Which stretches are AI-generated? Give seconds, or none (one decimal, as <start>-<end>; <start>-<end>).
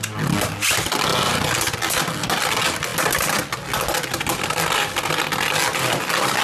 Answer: none